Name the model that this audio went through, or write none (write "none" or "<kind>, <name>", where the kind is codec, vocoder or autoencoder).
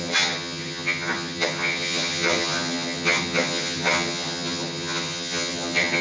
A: vocoder, HiFi-GAN